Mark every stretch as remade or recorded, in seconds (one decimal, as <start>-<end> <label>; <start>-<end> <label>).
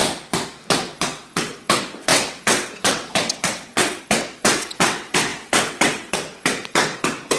0.0-0.7 recorded; 0.7-7.4 remade